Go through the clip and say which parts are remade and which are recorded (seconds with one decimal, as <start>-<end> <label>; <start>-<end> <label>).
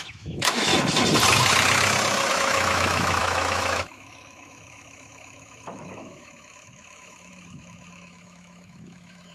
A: 0.0-0.7 remade; 0.7-2.3 recorded; 2.3-9.3 remade